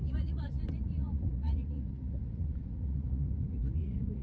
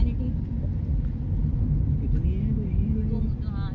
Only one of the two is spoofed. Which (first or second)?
first